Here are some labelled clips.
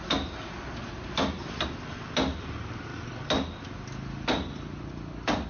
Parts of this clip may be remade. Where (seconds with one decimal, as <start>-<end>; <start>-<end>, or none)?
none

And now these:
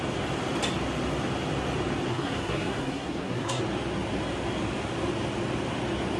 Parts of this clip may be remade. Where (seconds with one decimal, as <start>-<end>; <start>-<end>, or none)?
2.1-3.6

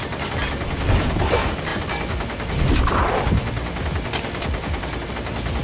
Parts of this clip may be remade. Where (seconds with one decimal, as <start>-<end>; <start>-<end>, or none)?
none

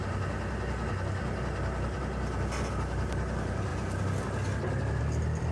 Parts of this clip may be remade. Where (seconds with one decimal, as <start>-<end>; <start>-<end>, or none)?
none

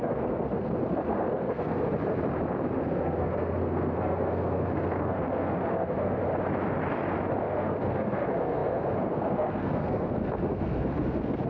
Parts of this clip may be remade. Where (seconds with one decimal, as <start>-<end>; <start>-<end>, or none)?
0.0-1.8; 2.7-6.2; 7.4-11.5

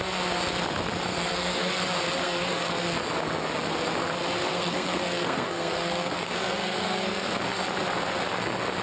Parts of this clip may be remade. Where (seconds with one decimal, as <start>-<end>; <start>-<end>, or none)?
1.1-1.7; 2.2-2.8; 4.5-7.3

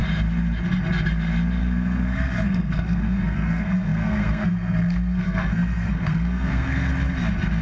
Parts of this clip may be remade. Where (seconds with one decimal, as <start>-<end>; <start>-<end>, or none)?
1.6-6.9

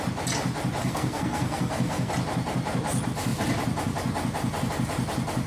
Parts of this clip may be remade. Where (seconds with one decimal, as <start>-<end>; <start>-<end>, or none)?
0.8-2.1